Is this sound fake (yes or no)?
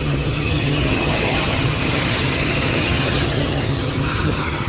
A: yes